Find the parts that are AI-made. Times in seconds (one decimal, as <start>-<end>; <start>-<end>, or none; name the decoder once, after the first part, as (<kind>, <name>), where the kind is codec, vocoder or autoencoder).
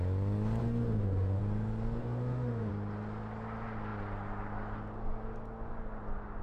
0.6-1.4 (autoencoder, DAC-VAE); 2.0-2.7